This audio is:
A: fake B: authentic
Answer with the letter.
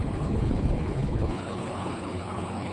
A